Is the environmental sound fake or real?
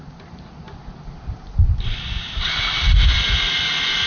real